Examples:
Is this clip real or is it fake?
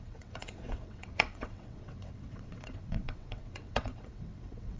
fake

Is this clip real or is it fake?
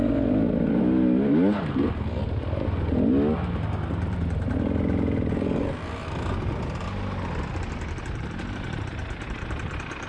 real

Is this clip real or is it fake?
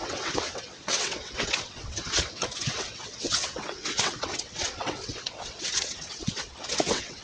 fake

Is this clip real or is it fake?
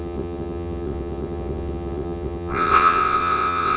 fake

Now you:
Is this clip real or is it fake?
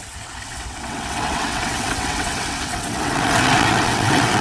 fake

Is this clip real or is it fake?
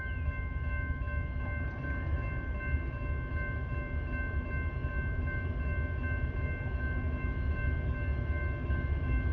real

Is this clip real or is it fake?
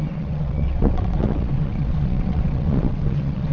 fake